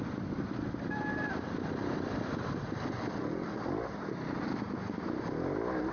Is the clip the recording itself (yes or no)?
no